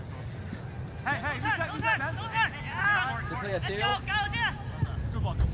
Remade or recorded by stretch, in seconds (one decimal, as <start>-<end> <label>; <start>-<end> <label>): 0.0-5.5 recorded